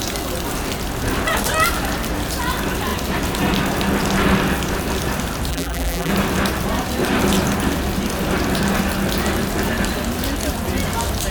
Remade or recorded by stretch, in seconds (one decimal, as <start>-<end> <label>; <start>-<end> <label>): 0.0-5.5 recorded; 5.5-6.1 remade; 6.1-11.3 recorded